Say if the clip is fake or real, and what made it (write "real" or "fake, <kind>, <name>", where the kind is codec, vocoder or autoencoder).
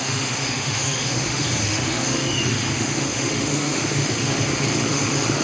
fake, autoencoder, DAC-VAE